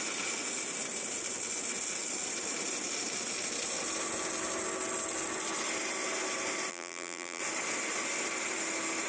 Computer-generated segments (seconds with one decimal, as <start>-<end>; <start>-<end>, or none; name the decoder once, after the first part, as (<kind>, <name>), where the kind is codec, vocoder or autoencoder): 6.7-7.4 (vocoder, BigVGAN v2)